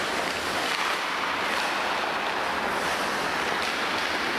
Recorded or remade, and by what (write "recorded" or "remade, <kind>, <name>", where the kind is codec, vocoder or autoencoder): recorded